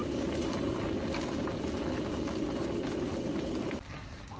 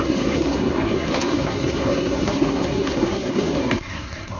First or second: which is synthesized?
second